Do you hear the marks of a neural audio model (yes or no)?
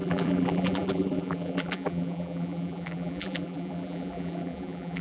yes